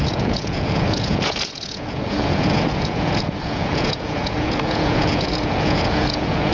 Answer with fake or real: fake